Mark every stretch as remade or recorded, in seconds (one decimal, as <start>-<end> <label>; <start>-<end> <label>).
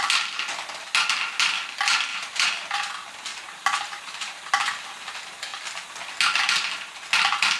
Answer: 0.0-2.1 recorded; 2.1-2.9 remade; 2.9-3.3 recorded; 3.3-4.5 remade; 4.5-7.6 recorded